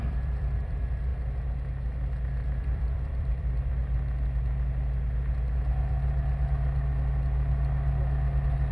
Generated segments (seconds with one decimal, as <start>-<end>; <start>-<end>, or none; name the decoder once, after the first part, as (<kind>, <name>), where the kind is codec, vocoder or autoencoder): 0.0-1.1 (vocoder, BigVGAN v2); 2.6-3.8